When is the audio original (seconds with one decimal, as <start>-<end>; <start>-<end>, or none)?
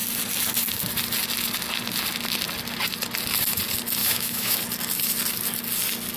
0.0-4.0; 4.6-6.2